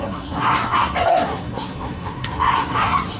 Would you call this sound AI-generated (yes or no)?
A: yes